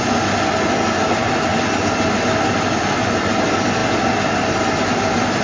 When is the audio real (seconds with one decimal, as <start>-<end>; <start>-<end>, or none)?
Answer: 0.0-5.4